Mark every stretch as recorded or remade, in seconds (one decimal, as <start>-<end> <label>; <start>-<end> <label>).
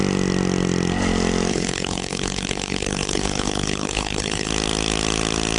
0.0-1.5 recorded; 1.5-4.5 remade; 4.5-5.6 recorded